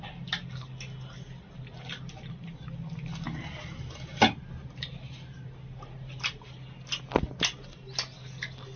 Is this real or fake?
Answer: real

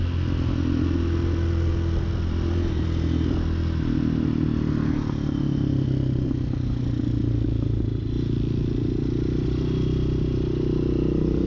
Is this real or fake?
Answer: real